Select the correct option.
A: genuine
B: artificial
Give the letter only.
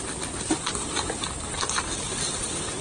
A